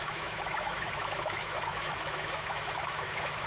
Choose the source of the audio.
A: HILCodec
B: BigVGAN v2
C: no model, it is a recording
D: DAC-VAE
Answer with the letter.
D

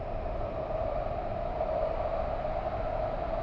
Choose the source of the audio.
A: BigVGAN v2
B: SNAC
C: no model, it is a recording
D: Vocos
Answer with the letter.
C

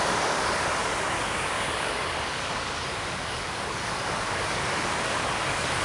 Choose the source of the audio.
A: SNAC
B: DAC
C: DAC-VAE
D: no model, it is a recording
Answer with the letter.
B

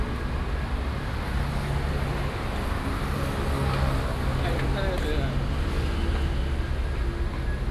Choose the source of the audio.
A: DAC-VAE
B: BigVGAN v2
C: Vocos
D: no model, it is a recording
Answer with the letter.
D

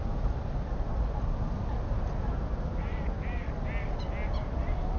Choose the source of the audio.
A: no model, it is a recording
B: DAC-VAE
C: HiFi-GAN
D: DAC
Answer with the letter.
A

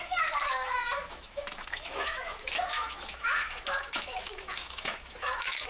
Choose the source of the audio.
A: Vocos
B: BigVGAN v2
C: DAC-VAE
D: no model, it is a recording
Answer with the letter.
C